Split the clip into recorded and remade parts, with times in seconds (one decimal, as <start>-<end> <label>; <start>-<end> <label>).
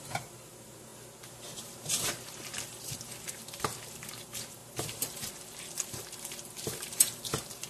0.0-0.9 remade; 0.9-1.6 recorded; 1.6-7.7 remade